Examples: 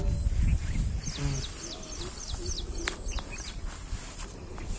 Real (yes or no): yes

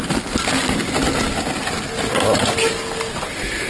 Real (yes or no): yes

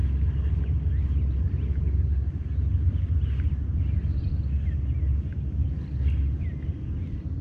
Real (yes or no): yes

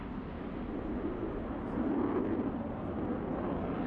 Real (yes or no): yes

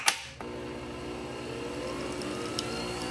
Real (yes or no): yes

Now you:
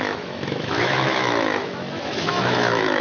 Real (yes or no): no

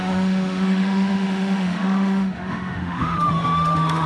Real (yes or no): no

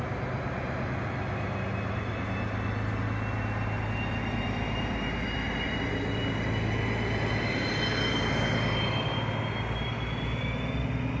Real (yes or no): yes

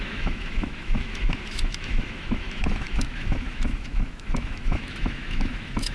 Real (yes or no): no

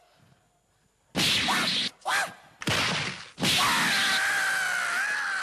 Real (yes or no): yes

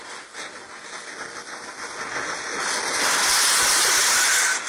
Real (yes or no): yes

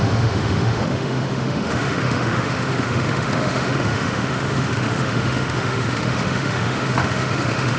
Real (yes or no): no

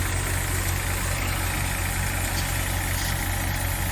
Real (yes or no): yes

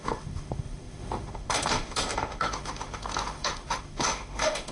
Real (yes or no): no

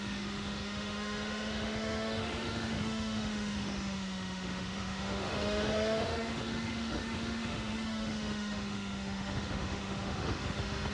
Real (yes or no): no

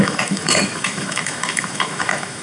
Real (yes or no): no